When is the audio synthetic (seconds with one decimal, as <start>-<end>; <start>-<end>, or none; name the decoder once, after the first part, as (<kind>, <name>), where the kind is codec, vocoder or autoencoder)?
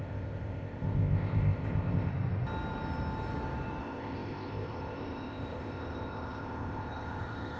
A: 0.0-2.1 (codec, ZipCodec); 3.8-7.6